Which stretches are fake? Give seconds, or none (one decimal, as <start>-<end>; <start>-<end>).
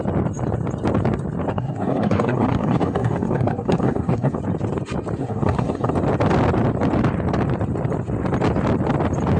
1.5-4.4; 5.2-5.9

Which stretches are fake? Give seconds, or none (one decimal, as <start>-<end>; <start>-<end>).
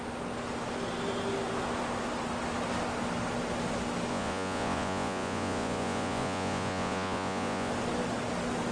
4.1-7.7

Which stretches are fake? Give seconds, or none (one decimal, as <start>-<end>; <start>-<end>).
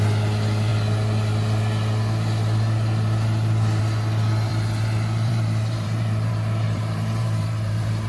4.5-8.1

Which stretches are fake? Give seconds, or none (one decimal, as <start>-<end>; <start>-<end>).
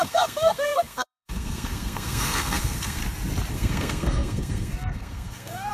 0.0-3.0; 3.5-5.7